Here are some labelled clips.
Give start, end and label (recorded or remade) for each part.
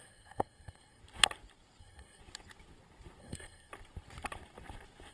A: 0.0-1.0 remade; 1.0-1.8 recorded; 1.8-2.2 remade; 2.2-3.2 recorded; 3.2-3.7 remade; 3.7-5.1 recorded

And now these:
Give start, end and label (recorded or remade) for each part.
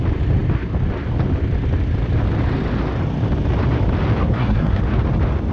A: 0.0-4.2 recorded; 4.2-4.8 remade; 4.8-5.5 recorded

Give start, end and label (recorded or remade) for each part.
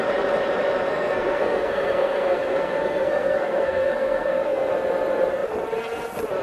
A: 0.0-0.9 recorded; 0.9-4.7 remade; 4.7-6.4 recorded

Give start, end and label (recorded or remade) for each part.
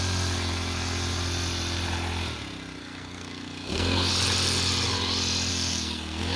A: 0.0-2.8 recorded; 2.8-4.1 remade; 4.1-5.5 recorded; 5.5-6.4 remade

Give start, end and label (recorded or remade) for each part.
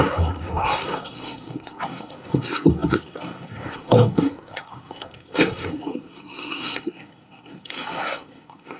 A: 0.0-8.8 remade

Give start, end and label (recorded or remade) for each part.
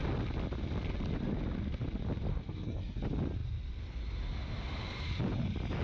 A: 0.0-2.3 recorded; 2.3-3.0 remade; 3.0-5.8 recorded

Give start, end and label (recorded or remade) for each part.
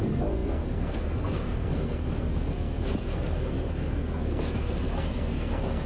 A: 0.0-5.9 remade